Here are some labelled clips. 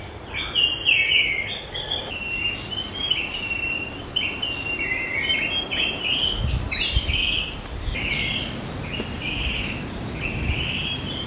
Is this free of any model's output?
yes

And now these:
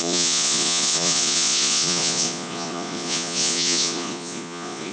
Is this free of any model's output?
no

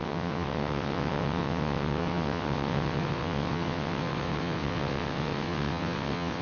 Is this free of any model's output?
no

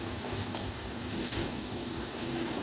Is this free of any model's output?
no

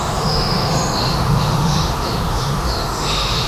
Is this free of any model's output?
no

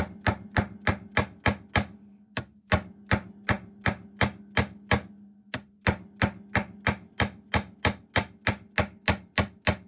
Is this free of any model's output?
yes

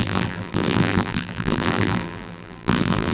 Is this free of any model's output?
no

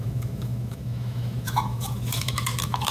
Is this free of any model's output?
no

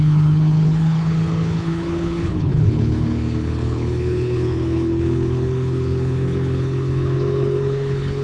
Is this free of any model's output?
no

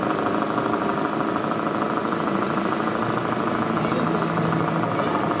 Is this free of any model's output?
yes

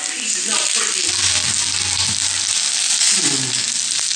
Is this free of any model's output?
yes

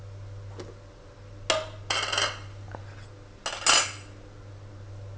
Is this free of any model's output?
yes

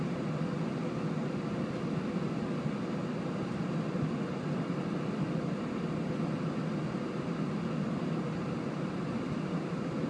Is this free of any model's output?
yes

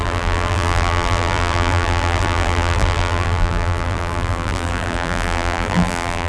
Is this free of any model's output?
no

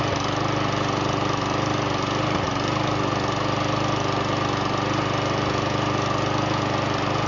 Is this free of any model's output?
yes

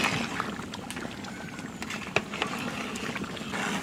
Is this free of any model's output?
yes